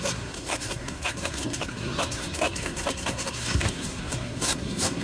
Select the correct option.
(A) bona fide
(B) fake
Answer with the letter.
B